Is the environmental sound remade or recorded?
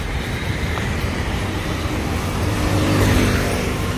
remade